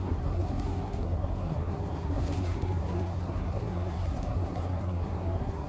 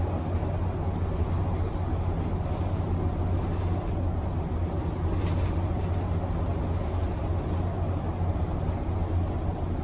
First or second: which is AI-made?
first